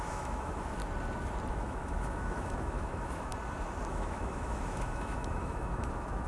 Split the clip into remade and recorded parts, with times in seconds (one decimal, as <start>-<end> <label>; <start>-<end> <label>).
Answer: 0.0-0.8 remade; 0.8-1.5 recorded; 1.5-3.3 remade; 3.3-3.9 recorded; 3.9-6.3 remade